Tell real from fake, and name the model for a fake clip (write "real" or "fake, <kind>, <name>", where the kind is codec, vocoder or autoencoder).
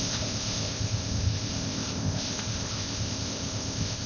fake, codec, ZipCodec